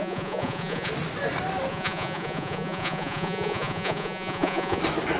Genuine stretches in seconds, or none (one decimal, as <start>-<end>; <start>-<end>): 0.9-1.7; 4.8-5.2